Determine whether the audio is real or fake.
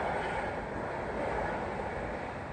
real